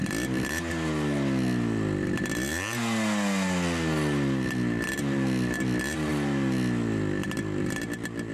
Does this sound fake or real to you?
real